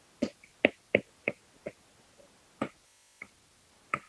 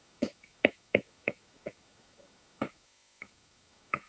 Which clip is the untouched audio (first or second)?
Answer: first